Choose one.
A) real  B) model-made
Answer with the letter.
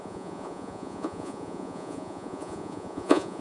B